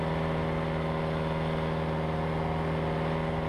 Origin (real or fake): real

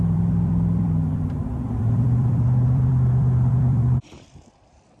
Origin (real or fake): fake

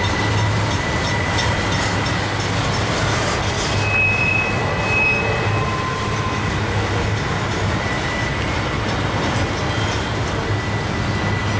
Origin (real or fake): real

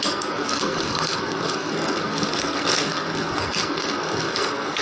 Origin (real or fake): fake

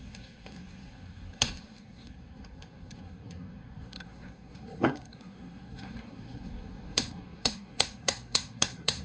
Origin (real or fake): fake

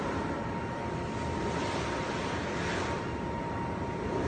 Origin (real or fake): real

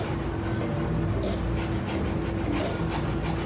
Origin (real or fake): real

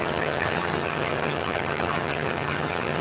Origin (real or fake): fake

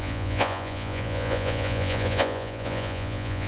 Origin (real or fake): fake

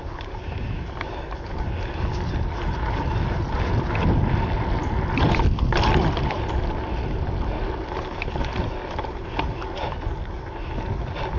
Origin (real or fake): real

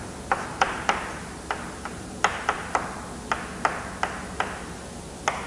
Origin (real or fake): real